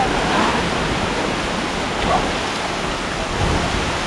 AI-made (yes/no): no